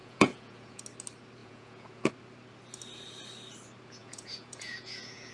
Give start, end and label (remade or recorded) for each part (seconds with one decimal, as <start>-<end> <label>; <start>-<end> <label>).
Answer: 0.0-0.8 remade; 0.8-1.4 recorded; 1.4-2.1 remade; 2.1-4.0 recorded; 4.0-5.3 remade